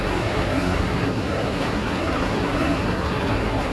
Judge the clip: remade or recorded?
remade